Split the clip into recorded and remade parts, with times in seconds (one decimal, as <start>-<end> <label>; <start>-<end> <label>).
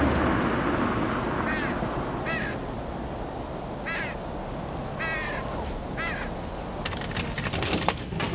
0.0-8.3 recorded